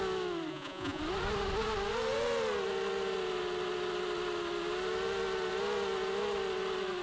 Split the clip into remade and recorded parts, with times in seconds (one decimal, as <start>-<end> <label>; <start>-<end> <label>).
0.0-0.5 recorded; 0.5-1.0 remade; 1.0-7.0 recorded